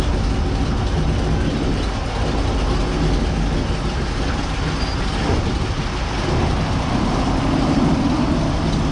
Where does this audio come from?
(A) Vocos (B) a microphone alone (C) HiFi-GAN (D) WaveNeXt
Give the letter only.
B